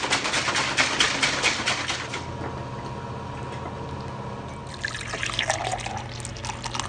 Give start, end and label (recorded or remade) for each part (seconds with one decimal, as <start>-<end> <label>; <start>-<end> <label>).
0.0-6.9 recorded